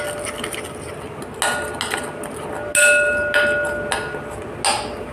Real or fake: real